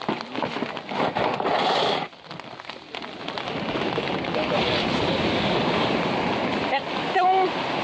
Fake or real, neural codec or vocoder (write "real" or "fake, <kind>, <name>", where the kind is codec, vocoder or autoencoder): real